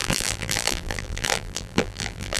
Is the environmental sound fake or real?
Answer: fake